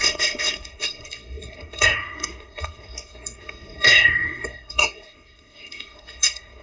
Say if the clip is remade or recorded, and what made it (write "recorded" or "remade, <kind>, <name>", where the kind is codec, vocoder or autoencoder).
remade, codec, SNAC